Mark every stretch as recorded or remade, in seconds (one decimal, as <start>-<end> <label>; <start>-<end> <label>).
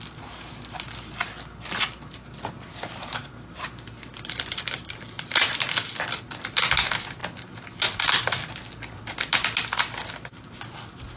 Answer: 0.0-11.2 recorded